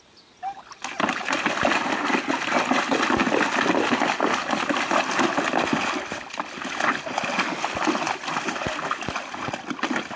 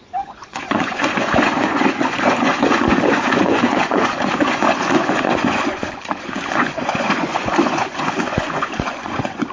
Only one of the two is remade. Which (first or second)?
second